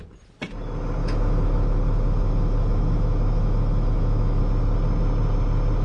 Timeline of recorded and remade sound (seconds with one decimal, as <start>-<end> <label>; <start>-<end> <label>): 0.0-1.0 recorded; 1.0-4.4 remade; 4.4-5.8 recorded